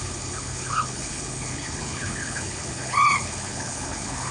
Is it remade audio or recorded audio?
remade